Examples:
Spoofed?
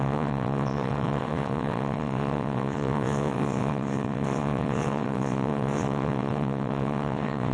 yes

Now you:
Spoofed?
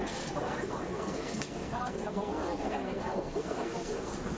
yes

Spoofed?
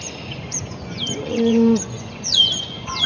yes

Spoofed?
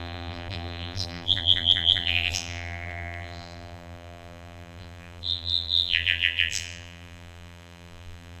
yes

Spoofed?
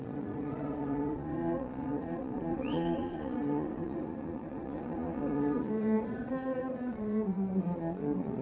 yes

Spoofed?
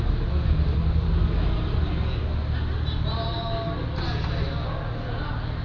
no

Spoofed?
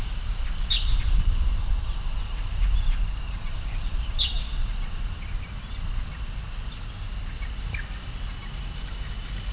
no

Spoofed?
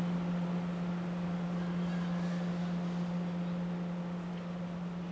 no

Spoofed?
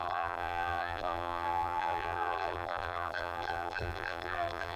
yes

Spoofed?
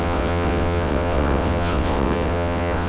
yes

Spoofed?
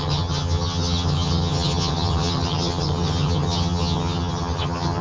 yes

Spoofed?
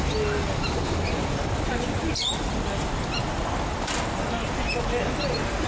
no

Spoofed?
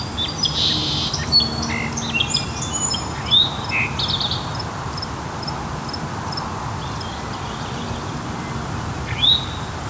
no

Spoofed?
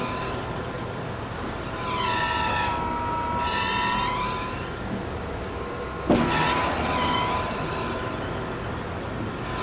no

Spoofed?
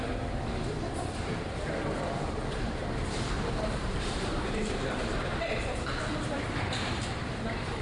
yes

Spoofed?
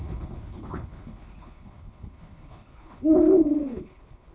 yes